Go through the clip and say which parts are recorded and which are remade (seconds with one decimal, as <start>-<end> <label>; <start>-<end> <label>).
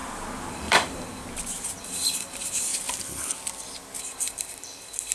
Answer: 0.0-0.5 recorded; 0.5-1.2 remade; 1.2-1.8 recorded; 1.8-2.7 remade; 2.7-4.0 recorded; 4.0-5.1 remade